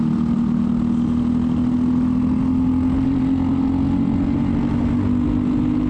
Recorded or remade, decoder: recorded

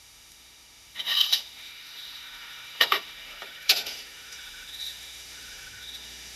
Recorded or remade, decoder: remade, autoencoder, DAC-VAE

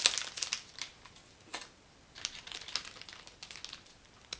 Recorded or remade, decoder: recorded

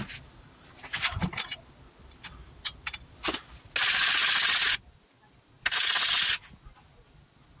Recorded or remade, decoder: recorded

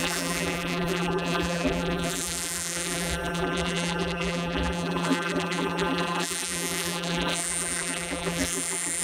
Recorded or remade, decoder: remade, vocoder, BigVGAN v2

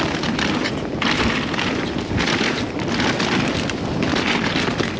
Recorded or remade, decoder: recorded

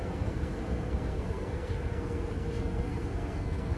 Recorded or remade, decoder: remade, codec, SNAC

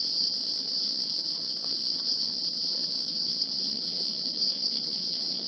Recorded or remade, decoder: remade, vocoder, WaveNeXt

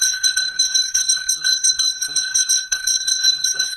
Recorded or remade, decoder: remade, codec, SNAC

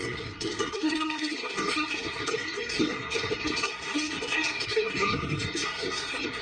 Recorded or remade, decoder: remade, codec, SNAC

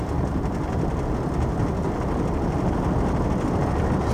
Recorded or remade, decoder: recorded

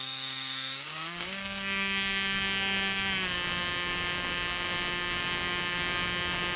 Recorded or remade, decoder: remade, codec, DAC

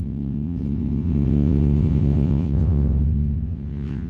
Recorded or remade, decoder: remade, vocoder, WaveNeXt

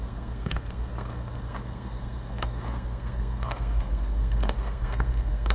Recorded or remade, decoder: remade, codec, SNAC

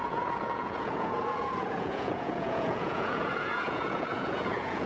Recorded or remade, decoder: remade, vocoder, Vocos